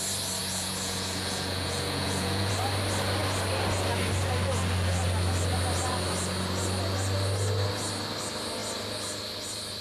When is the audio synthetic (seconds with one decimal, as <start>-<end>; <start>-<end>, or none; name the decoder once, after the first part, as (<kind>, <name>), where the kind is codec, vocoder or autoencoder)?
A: 0.4-2.5 (vocoder, Vocos)